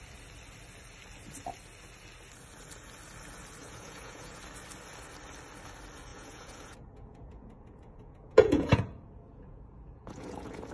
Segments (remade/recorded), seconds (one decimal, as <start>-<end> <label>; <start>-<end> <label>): 0.0-3.6 recorded; 3.6-4.4 remade; 4.4-6.1 recorded; 6.1-10.7 remade